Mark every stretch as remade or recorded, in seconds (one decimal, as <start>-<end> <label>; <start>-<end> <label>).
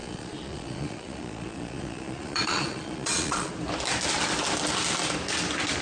0.0-3.5 remade; 3.5-5.8 recorded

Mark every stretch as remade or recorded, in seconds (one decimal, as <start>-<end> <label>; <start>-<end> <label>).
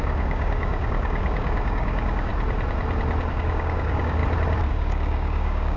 0.0-2.3 remade; 2.3-3.3 recorded; 3.3-4.2 remade; 4.2-4.7 recorded; 4.7-5.8 remade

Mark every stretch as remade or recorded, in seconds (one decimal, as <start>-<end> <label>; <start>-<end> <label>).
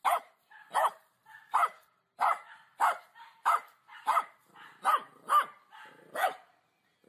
0.0-7.1 recorded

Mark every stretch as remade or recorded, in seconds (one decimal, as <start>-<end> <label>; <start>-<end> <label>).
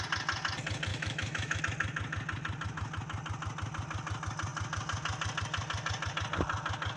0.0-0.9 recorded; 0.9-1.6 remade; 1.6-7.0 recorded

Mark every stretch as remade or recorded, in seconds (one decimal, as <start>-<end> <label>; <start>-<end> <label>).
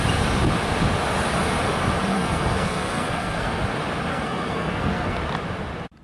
0.0-2.1 recorded; 2.1-3.6 remade; 3.6-4.1 recorded; 4.1-5.2 remade; 5.2-6.0 recorded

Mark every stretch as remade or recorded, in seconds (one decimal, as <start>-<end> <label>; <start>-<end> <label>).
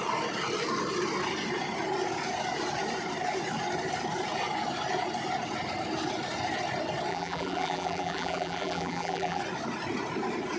0.0-7.1 recorded; 7.1-9.4 remade; 9.4-10.6 recorded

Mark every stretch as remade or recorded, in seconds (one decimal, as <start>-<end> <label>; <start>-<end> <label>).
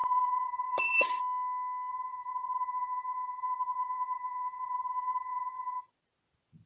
0.0-1.2 remade; 1.2-1.9 recorded; 1.9-5.9 remade; 5.9-6.7 recorded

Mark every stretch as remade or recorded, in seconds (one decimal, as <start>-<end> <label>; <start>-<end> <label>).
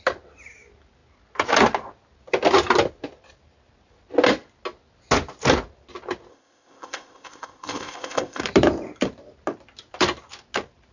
0.0-6.3 recorded; 6.3-8.4 remade; 8.4-10.9 recorded